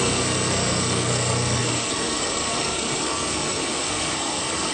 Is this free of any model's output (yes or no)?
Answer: no